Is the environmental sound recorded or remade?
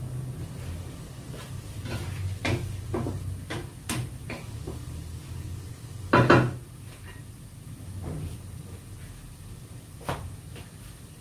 recorded